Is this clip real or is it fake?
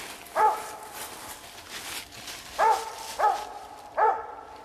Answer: real